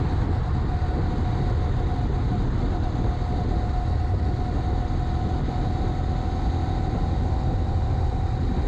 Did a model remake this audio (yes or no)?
no